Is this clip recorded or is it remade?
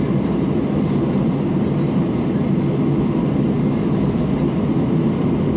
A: recorded